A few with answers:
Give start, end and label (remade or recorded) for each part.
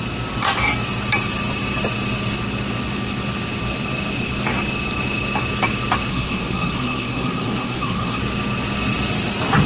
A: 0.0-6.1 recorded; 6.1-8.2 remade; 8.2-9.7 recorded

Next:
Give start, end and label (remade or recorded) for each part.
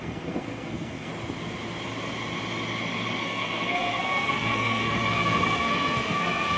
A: 0.0-1.1 remade; 1.1-3.2 recorded; 3.2-6.6 remade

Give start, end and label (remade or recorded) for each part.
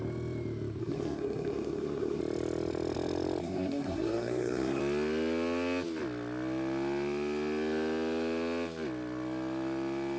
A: 0.0-0.8 recorded; 0.8-2.2 remade; 2.2-3.4 recorded; 3.4-4.8 remade; 4.8-10.2 recorded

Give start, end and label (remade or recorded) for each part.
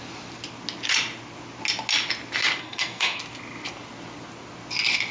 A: 0.0-2.6 recorded; 2.6-3.2 remade; 3.2-5.1 recorded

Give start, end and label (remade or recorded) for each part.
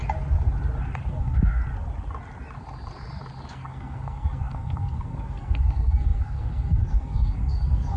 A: 0.0-1.1 recorded; 1.1-1.6 remade; 1.6-3.5 recorded; 3.5-8.0 remade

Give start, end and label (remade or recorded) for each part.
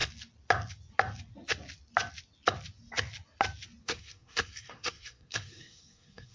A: 0.0-3.8 recorded; 3.8-6.3 remade